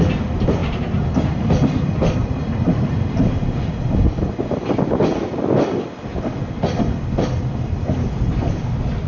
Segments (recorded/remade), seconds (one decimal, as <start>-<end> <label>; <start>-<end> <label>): 0.0-9.1 recorded